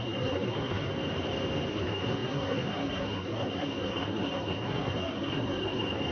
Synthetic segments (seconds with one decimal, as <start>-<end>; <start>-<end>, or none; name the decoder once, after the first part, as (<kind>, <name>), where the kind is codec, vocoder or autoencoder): 0.0-0.9 (codec, SNAC); 1.7-6.1